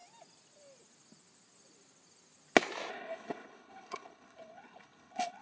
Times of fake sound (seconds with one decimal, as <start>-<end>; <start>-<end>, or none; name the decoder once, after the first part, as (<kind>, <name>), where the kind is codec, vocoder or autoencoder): 2.9-5.4 (codec, HILCodec)